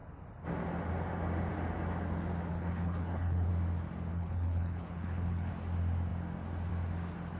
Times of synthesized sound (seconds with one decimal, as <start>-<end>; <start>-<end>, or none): 2.5-3.5; 4.1-5.5